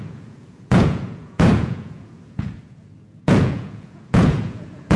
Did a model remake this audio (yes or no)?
yes